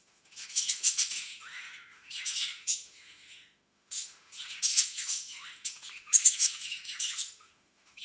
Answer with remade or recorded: remade